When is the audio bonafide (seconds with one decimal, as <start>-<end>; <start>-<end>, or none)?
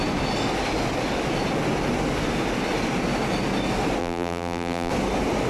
0.0-4.0; 4.9-5.5